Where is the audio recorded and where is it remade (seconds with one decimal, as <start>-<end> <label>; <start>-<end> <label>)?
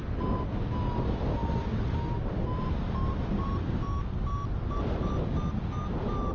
0.0-6.3 recorded